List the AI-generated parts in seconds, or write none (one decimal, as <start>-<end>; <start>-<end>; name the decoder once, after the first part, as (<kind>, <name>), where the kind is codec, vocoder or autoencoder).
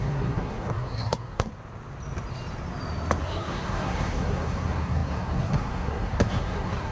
0.0-1.5 (codec, SNAC); 3.2-6.9